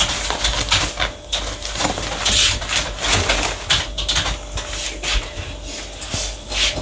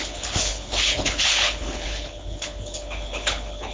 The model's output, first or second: second